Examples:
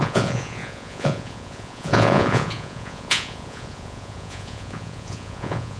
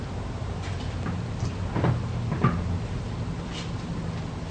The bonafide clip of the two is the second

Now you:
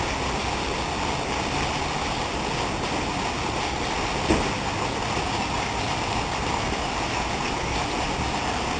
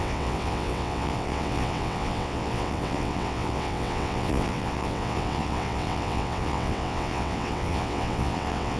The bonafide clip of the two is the first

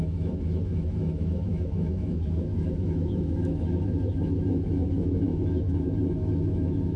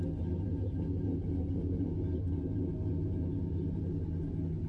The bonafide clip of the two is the second